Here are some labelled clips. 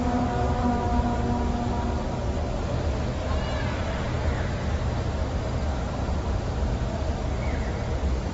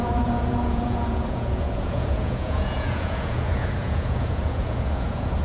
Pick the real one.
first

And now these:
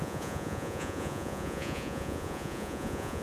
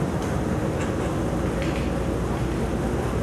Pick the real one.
second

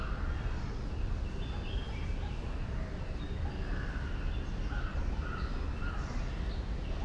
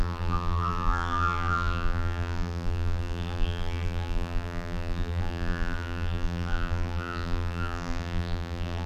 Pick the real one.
first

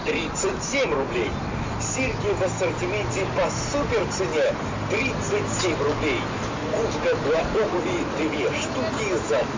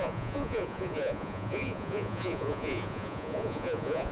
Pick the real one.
first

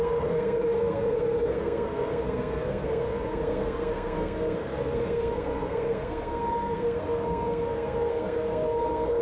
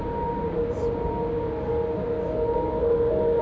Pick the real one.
second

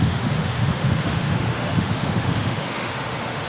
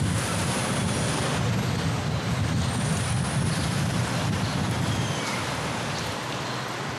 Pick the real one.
second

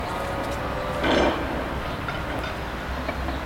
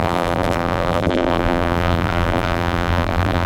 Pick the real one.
first